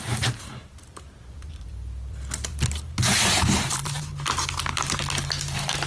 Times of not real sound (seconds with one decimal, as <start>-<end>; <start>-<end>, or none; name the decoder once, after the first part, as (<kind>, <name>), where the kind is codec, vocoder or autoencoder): 0.5-4.0 (vocoder, BigVGAN v2)